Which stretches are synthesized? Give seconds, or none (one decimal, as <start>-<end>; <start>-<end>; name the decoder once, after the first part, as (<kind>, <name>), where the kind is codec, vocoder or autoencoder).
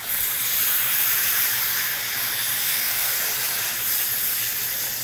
2.5-3.2 (codec, SNAC)